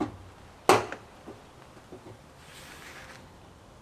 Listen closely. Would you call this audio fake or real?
real